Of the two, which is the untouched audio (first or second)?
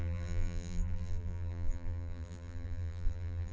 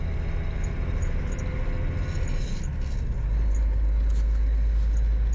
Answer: second